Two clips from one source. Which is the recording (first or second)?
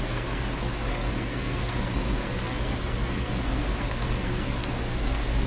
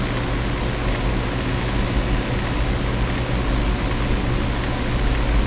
second